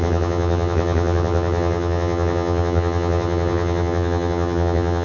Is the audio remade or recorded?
remade